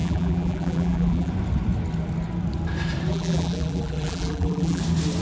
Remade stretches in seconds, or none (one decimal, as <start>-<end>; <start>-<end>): 0.0-1.3; 3.1-4.8

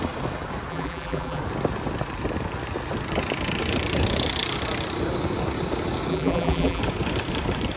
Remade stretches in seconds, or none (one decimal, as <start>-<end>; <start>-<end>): 0.7-1.4; 6.1-6.8

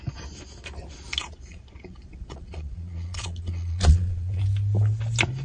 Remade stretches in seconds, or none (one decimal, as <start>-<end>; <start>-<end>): 1.2-4.4